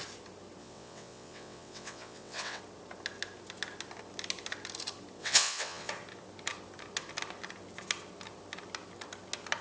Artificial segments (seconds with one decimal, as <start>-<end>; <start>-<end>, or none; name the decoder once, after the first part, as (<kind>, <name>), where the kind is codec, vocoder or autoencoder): 0.6-2.6 (vocoder, WaveNeXt); 5.2-5.9

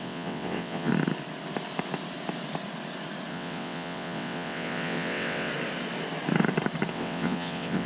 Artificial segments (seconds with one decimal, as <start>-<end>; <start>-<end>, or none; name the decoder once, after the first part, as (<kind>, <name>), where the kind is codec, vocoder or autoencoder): 0.0-0.9 (vocoder, WaveNeXt); 3.3-5.5; 6.9-7.9

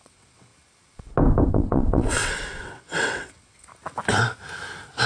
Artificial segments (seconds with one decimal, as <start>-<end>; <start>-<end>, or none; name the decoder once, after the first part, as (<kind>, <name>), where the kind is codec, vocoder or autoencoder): 0.0-0.5 (vocoder, WaveNeXt); 1.5-3.7

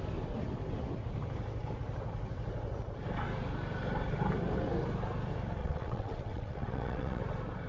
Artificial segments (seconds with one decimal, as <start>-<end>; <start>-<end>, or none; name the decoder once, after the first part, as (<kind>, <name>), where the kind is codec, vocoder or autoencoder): 5.6-7.2 (vocoder, WaveNeXt)

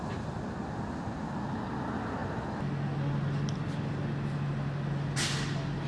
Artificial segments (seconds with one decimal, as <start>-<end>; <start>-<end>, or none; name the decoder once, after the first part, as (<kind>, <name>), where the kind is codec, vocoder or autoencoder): none

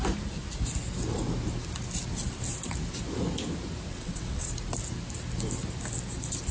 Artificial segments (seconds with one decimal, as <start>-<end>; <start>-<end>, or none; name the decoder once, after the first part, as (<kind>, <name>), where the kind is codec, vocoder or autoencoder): 3.9-4.5 (vocoder, WaveNeXt)

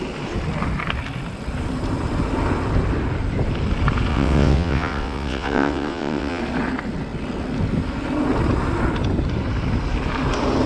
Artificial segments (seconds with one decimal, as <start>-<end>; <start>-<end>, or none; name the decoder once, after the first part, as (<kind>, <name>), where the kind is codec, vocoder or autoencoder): 4.1-6.4 (vocoder, WaveNeXt)